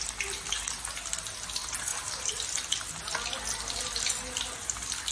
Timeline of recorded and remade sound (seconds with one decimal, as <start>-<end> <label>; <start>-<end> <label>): 0.0-5.1 recorded